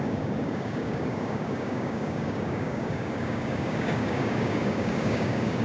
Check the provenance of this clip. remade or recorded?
remade